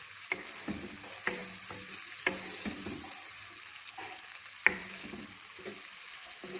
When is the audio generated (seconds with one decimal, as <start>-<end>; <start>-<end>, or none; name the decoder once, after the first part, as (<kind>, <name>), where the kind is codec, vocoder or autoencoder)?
none